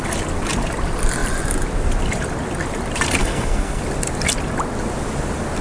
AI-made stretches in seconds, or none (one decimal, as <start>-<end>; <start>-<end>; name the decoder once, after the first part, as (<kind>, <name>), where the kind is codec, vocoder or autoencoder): 3.2-3.8 (codec, SNAC)